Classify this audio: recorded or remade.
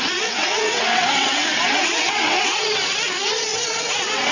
remade